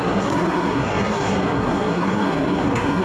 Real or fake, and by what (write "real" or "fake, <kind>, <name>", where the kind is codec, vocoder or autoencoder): fake, codec, SNAC